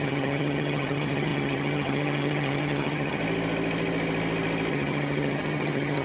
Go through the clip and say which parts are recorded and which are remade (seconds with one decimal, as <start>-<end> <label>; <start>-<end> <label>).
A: 0.0-3.2 remade; 3.2-4.7 recorded; 4.7-6.0 remade